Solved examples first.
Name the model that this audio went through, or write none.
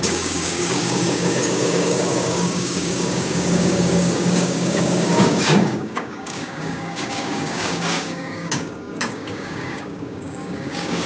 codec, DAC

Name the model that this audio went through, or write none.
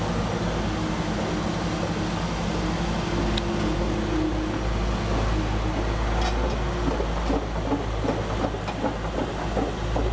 none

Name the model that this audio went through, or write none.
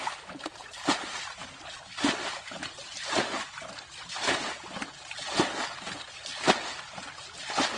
none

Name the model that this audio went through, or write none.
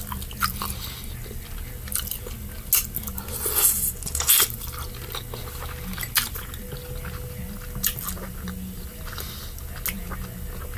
none